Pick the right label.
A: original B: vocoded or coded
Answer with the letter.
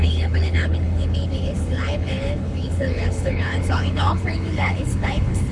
B